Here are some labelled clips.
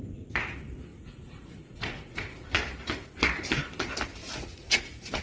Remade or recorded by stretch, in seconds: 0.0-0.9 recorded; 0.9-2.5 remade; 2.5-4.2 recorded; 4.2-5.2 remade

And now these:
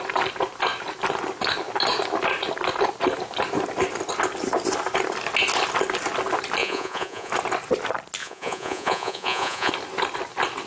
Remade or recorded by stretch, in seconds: 0.0-6.6 recorded; 6.6-7.3 remade; 7.3-8.2 recorded; 8.2-9.7 remade; 9.7-10.7 recorded

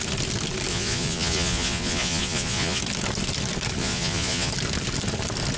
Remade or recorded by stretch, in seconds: 0.0-0.7 recorded; 0.7-2.8 remade; 2.8-3.8 recorded; 3.8-4.5 remade; 4.5-5.6 recorded

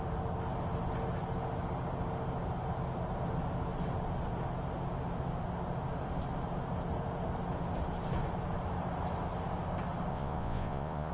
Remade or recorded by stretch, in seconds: 0.0-10.1 recorded; 10.1-11.1 remade